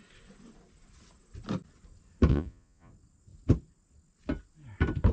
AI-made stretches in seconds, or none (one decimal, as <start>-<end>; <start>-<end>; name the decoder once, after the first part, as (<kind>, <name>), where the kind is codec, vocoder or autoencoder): 2.3-2.9 (vocoder, Vocos)